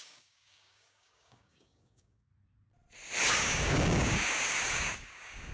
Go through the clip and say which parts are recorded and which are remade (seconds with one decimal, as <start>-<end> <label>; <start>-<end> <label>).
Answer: 0.0-2.3 remade; 2.3-3.2 recorded; 3.2-5.5 remade

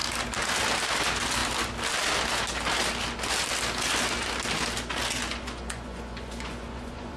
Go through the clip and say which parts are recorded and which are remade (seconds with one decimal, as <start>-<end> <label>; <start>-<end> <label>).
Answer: 0.0-5.3 recorded; 5.3-7.2 remade

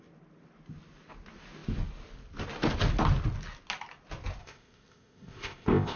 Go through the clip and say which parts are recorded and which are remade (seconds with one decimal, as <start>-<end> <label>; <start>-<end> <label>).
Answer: 0.0-4.4 recorded; 4.4-6.0 remade

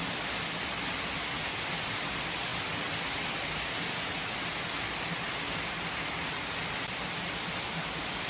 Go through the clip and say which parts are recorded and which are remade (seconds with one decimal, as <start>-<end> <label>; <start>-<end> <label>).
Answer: 0.0-8.3 recorded

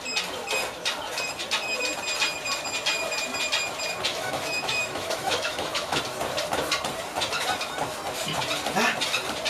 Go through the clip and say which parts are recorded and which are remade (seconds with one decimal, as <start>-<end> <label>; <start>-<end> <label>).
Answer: 0.0-4.1 recorded; 4.1-6.0 remade; 6.0-9.5 recorded

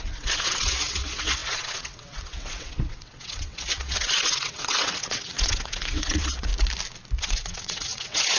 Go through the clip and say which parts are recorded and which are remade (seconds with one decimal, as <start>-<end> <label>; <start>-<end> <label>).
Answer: 0.0-6.5 remade; 6.5-7.2 recorded; 7.2-8.4 remade